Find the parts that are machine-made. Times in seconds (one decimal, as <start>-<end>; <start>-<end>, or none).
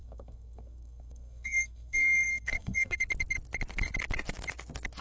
0.0-3.0